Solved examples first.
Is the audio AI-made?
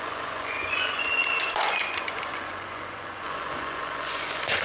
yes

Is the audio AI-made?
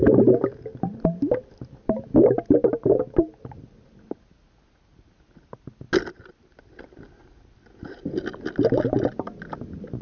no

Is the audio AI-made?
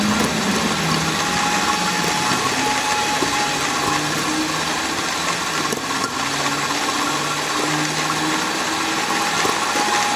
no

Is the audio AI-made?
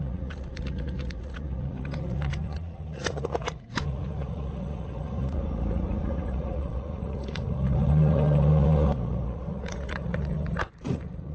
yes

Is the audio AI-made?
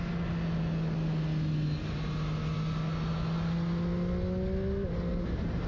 no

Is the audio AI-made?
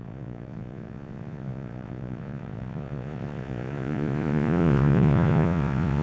yes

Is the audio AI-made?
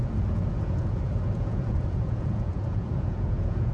yes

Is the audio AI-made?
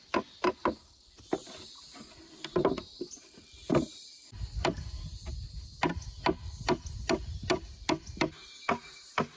no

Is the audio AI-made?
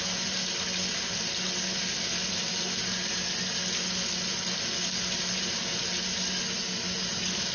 no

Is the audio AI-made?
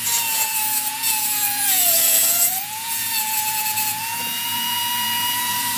yes